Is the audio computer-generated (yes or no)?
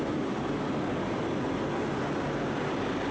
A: no